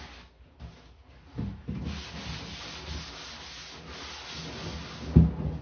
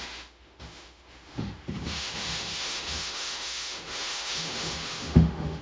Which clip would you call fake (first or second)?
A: second